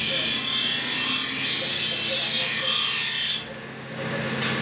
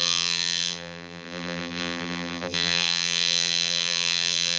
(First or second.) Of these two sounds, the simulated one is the second